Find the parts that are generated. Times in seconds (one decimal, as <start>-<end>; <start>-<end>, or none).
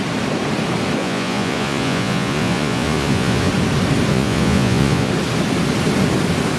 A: 1.0-3.5; 4.1-5.1